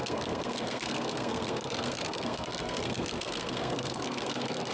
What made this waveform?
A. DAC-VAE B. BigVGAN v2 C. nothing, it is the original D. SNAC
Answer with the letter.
D